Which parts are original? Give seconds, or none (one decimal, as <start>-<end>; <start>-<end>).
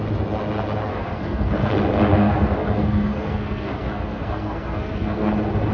0.0-0.9; 1.7-2.1; 5.3-5.7